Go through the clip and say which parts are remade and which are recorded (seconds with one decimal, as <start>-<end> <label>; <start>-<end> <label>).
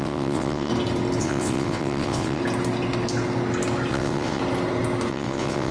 0.0-0.7 remade; 0.7-1.2 recorded; 1.2-2.4 remade; 2.4-3.9 recorded; 3.9-4.4 remade; 4.4-5.1 recorded; 5.1-5.7 remade